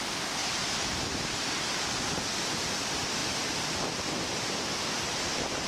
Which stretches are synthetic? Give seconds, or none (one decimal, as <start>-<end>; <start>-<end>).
0.4-1.5; 3.2-5.7